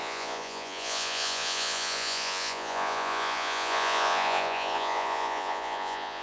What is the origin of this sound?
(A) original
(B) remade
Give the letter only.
B